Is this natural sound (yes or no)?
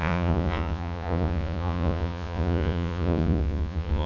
no